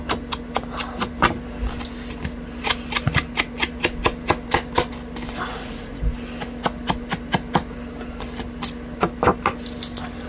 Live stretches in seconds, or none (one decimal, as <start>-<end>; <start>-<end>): 0.0-5.5; 6.0-10.3